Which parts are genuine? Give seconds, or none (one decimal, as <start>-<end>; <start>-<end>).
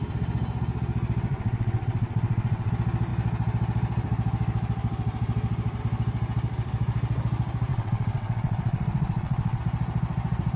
0.0-1.3; 2.7-7.7; 9.6-10.6